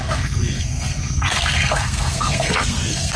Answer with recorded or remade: remade